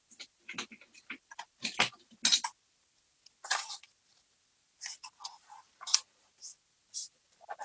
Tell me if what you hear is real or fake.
real